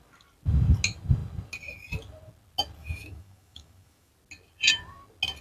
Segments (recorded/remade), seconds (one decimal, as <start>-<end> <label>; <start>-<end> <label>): 0.0-2.8 recorded; 2.8-4.1 remade; 4.1-5.4 recorded